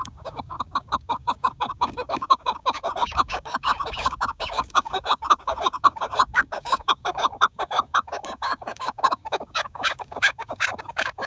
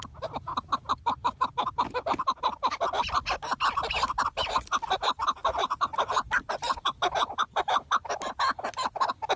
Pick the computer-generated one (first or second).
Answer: first